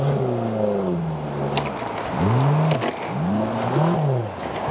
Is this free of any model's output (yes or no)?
yes